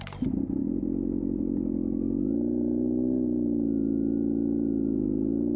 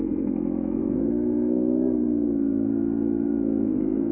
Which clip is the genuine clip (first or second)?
first